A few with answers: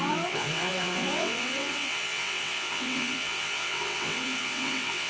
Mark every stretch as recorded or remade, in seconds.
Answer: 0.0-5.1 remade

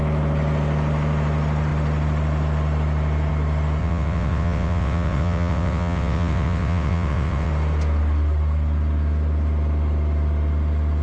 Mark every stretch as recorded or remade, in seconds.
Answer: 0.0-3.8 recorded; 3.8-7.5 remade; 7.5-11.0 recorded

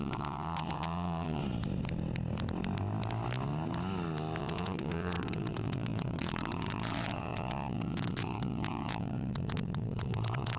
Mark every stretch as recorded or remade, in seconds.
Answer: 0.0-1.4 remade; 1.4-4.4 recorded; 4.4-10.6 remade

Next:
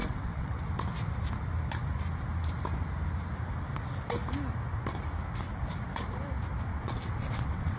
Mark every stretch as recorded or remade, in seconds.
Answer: 0.0-0.6 remade; 0.6-6.7 recorded; 6.7-7.8 remade

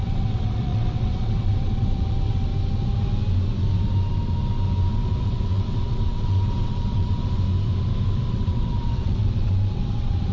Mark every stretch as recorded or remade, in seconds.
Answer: 0.0-2.5 remade; 2.5-4.9 recorded; 4.9-7.2 remade; 7.2-8.3 recorded; 8.3-10.3 remade

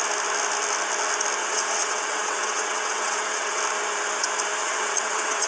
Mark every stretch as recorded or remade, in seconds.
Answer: 0.0-1.4 recorded; 1.4-3.6 remade; 3.6-4.6 recorded; 4.6-5.5 remade

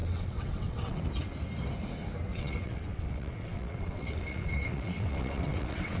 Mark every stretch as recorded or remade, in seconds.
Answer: 0.0-1.0 remade; 1.0-2.3 recorded; 2.3-6.0 remade

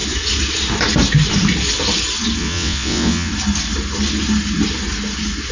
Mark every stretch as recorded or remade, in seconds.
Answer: 0.0-2.4 recorded; 2.4-3.3 remade; 3.3-5.5 recorded